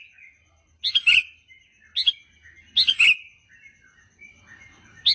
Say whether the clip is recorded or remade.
recorded